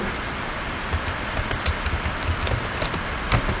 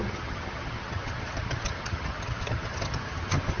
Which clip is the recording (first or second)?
first